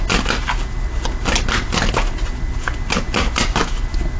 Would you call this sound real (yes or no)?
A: yes